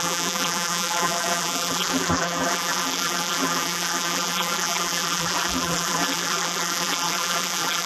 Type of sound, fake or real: fake